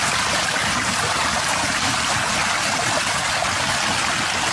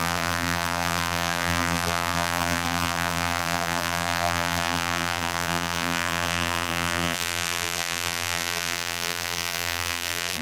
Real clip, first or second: first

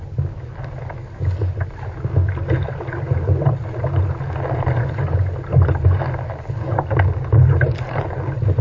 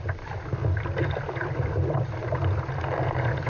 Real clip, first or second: first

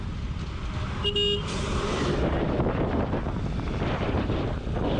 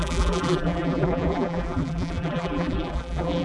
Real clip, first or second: first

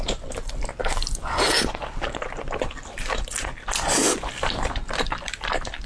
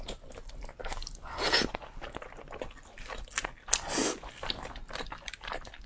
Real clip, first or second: second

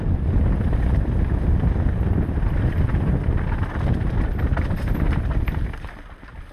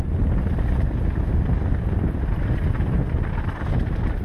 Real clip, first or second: second